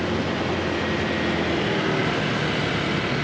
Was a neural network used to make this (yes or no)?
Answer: no